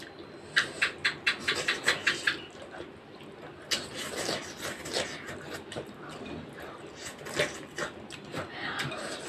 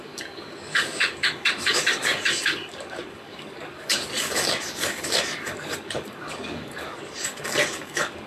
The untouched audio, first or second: first